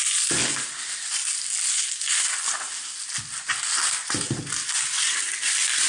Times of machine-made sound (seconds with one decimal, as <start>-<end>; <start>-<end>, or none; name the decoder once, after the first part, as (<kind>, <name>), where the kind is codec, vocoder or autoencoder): none